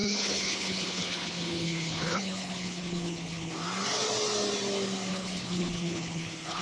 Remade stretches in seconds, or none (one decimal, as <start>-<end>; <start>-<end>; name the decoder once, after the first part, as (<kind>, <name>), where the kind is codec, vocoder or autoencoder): 0.0-3.5 (codec, HILCodec); 5.1-6.6